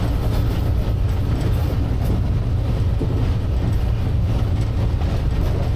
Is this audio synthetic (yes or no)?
no